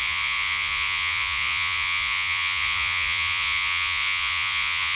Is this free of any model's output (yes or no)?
no